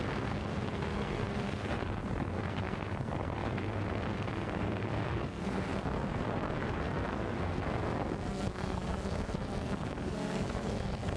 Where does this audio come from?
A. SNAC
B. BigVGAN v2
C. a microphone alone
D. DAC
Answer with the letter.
A